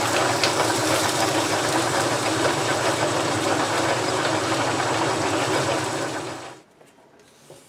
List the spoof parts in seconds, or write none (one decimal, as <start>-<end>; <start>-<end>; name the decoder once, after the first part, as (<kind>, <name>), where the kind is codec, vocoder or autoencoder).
0.8-5.1 (vocoder, BigVGAN v2)